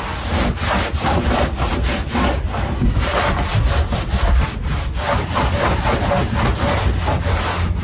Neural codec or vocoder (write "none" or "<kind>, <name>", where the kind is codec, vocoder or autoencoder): none